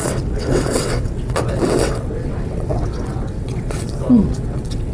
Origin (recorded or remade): remade